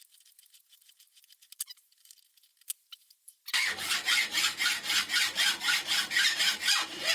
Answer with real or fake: fake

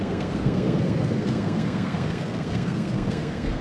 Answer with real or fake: fake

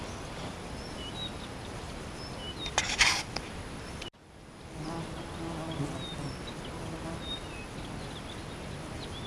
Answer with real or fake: real